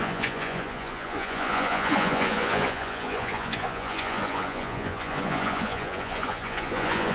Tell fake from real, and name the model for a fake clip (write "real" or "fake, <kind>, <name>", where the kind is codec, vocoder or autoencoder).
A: fake, vocoder, Vocos